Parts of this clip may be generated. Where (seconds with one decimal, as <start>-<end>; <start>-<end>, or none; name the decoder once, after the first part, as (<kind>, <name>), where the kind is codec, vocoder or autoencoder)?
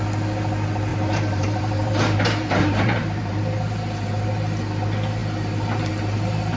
0.9-3.4 (vocoder, BigVGAN v2)